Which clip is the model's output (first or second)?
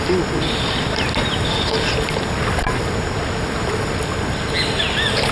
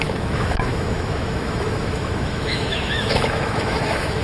second